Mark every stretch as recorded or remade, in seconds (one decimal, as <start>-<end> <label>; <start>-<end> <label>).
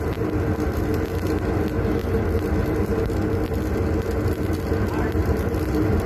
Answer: 0.0-6.1 recorded